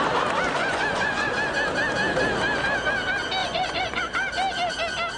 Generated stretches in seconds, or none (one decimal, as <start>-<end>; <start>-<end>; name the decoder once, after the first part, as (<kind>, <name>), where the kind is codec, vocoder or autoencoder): 0.6-1.3 (vocoder, Vocos); 3.4-4.0